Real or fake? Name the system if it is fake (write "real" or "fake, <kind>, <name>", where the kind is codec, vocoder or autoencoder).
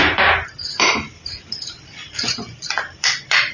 fake, vocoder, BigVGAN v2